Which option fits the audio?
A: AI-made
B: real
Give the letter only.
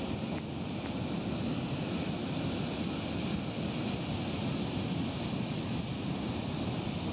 B